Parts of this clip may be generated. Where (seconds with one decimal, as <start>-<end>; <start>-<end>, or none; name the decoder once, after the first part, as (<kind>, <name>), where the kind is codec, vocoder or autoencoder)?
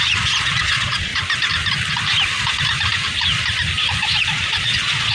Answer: 0.0-1.1 (vocoder, Vocos); 4.2-5.1